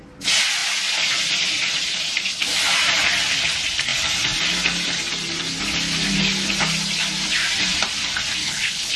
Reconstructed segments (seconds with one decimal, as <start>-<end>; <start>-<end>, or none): 8.4-9.0